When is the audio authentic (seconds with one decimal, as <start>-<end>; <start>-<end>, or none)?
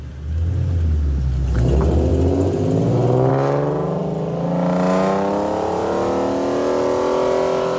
0.0-7.8